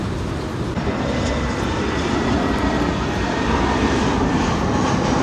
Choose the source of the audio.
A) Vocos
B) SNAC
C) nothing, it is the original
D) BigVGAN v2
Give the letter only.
D